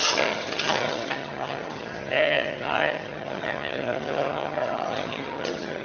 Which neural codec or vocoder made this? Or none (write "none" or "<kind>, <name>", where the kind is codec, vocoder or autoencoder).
vocoder, HiFi-GAN